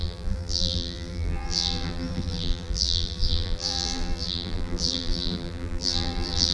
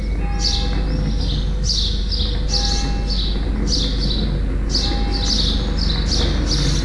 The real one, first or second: second